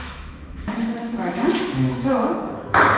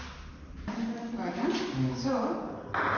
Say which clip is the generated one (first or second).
first